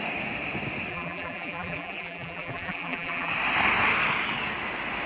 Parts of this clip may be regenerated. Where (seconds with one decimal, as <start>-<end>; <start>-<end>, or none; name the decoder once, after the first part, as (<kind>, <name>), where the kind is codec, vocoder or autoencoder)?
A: 0.9-3.3 (vocoder, BigVGAN v2)